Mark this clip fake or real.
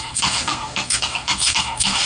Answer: fake